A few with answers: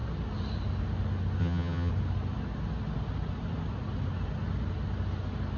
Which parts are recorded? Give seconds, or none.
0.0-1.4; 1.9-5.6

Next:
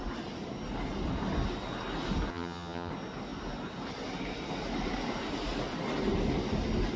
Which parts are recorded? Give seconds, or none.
0.0-2.3; 2.9-7.0

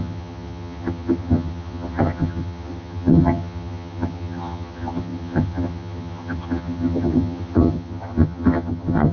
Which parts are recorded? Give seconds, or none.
none

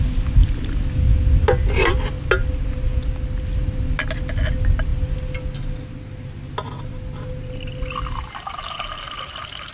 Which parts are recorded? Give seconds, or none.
0.0-9.7

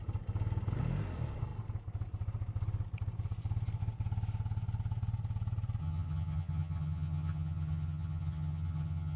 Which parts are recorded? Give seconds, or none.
0.0-5.8

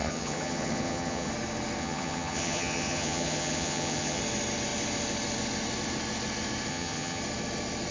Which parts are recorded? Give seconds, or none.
1.3-1.8; 4.2-6.7; 7.2-7.9